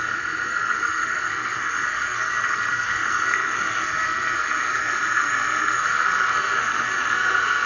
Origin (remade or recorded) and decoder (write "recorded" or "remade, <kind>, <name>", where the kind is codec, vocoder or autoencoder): remade, codec, SNAC